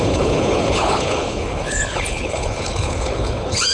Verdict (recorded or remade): remade